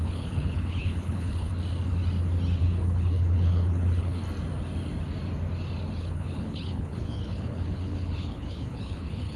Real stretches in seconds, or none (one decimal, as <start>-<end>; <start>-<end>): 1.5-2.6; 4.2-6.0